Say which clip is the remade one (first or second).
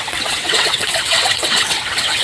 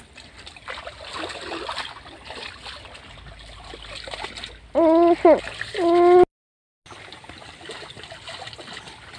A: first